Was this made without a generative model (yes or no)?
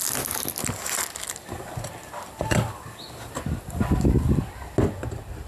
yes